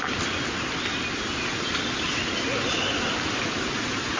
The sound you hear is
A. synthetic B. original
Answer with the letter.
B